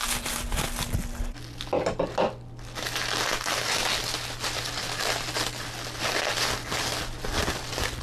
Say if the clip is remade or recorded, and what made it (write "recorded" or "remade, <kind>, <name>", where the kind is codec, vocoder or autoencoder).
recorded